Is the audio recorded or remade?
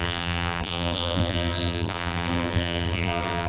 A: remade